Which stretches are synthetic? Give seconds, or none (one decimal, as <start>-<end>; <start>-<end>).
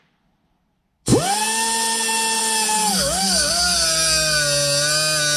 2.8-3.5